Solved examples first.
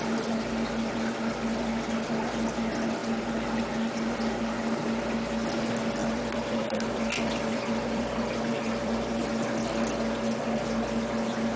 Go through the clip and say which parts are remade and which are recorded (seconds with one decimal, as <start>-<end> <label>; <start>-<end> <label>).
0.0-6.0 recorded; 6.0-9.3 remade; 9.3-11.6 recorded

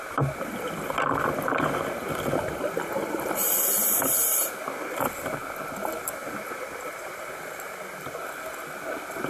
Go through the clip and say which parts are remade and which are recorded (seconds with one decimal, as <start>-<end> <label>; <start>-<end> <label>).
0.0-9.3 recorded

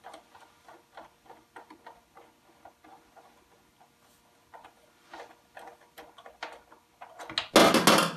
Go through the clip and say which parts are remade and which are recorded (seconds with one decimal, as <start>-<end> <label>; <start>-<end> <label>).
0.0-8.2 recorded